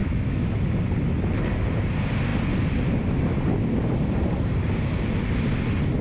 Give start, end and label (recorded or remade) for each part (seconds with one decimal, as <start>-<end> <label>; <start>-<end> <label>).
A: 0.0-0.6 remade; 0.6-6.0 recorded